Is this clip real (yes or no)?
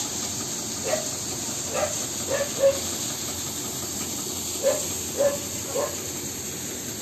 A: yes